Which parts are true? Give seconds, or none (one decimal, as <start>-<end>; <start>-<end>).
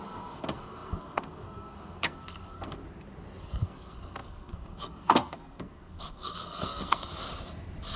2.8-3.4; 7.1-8.0